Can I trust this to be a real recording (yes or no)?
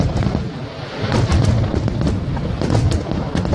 yes